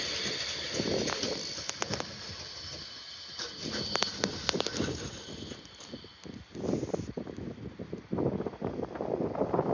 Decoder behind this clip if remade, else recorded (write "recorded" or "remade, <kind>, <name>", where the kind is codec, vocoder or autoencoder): recorded